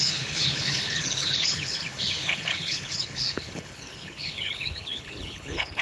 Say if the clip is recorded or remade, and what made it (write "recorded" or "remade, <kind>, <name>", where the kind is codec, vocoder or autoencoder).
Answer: remade, codec, HILCodec